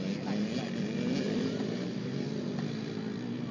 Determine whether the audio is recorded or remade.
recorded